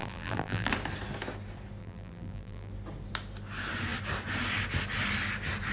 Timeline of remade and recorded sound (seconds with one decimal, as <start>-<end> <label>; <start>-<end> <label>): 0.0-0.7 remade; 0.7-1.8 recorded; 1.8-2.7 remade; 2.7-5.7 recorded